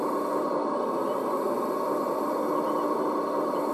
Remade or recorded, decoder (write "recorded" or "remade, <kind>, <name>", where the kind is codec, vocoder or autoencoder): recorded